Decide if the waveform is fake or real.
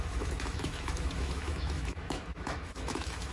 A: fake